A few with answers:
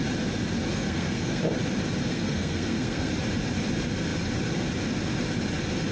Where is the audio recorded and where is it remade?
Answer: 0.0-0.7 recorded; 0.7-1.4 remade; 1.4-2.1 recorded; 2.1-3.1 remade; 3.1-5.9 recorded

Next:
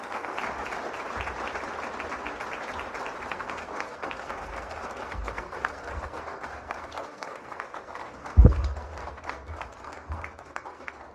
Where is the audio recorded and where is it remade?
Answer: 0.0-0.4 remade; 0.4-3.3 recorded; 3.3-11.1 remade

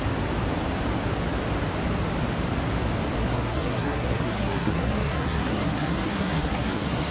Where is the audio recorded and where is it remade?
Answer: 0.0-3.2 recorded; 3.2-7.1 remade

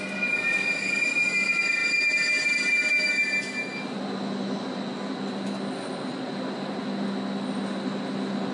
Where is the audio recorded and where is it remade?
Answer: 0.0-8.5 recorded

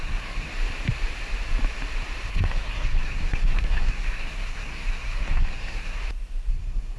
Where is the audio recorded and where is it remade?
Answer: 0.0-0.5 remade; 0.5-2.3 recorded; 2.3-6.0 remade; 6.0-6.5 recorded; 6.5-7.0 remade